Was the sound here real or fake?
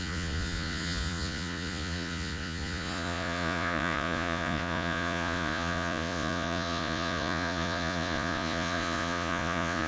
fake